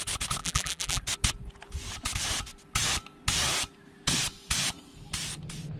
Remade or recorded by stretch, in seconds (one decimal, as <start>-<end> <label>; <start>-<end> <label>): 0.0-0.4 recorded; 0.4-1.0 remade; 1.0-5.8 recorded